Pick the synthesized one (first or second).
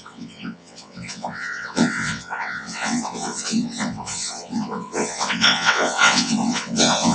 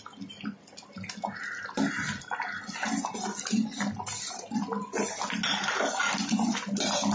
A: first